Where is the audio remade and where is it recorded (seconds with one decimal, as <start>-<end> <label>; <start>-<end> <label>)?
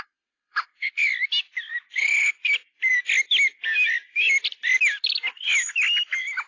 0.0-1.1 remade; 1.1-1.9 recorded; 1.9-2.4 remade; 2.4-6.5 recorded